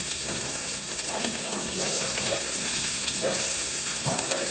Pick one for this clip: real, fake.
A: fake